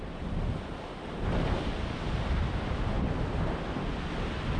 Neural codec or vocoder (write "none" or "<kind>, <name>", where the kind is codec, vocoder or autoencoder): none